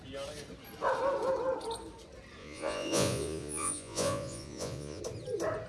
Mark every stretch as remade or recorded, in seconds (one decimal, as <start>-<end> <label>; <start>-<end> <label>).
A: 0.0-2.4 recorded; 2.4-5.0 remade; 5.0-5.7 recorded